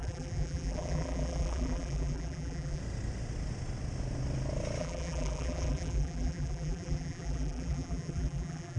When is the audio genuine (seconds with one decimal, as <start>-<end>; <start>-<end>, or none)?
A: 2.8-4.8